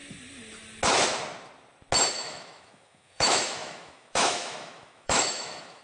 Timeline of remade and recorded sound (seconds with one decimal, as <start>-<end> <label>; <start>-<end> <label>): 0.0-2.1 recorded; 2.1-5.8 remade